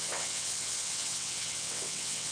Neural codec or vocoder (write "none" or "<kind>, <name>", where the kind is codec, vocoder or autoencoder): vocoder, WaveNeXt